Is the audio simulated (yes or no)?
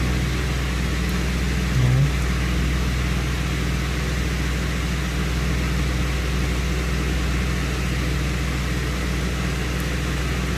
no